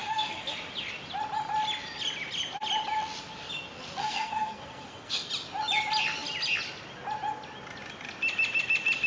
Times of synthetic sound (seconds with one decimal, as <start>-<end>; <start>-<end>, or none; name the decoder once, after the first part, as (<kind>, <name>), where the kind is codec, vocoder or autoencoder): 0.0-0.5 (codec, SNAC); 4.0-5.3